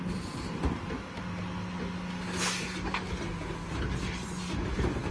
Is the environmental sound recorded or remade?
recorded